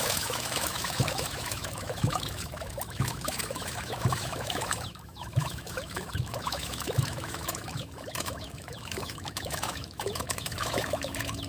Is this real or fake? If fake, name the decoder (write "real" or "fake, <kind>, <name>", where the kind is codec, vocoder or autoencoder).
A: fake, autoencoder, DAC-VAE